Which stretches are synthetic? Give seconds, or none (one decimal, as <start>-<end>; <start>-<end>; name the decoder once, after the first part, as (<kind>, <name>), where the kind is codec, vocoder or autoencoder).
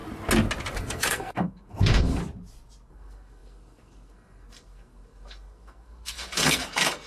0.8-2.2 (codec, SNAC); 2.9-7.1